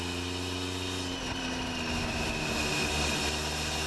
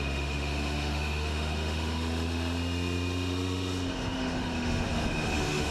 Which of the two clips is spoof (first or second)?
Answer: second